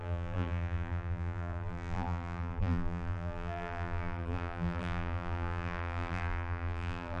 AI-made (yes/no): yes